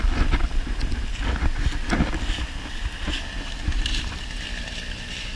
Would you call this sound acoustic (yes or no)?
yes